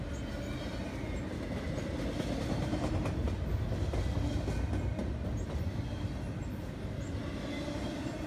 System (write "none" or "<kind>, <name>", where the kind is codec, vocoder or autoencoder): none